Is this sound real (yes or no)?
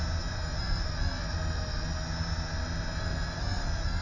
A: yes